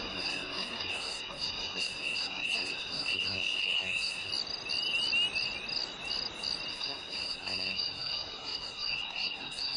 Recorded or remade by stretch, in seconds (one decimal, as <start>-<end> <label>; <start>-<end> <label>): 0.0-4.3 remade; 4.3-6.7 recorded; 6.7-9.8 remade